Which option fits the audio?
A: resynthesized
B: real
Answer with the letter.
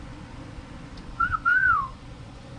A